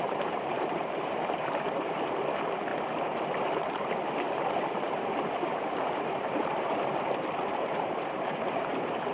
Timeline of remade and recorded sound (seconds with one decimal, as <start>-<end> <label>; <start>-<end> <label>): 0.0-2.7 remade; 2.7-3.4 recorded; 3.4-9.1 remade